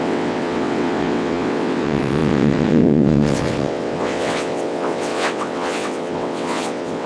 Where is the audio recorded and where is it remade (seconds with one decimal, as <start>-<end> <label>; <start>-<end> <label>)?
0.0-7.1 remade